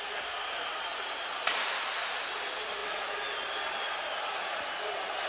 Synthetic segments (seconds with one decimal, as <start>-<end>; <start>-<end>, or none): none